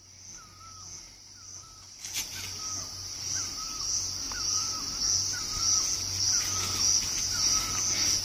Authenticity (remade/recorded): recorded